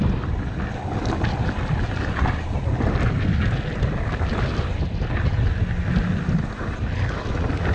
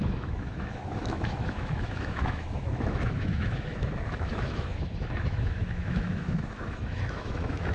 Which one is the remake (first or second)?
second